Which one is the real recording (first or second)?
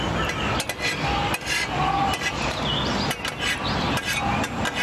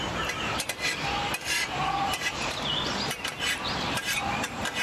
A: first